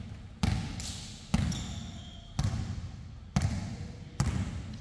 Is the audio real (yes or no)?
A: yes